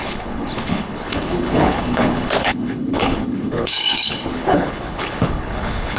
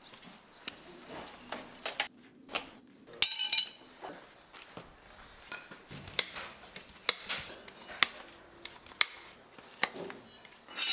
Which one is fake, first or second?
first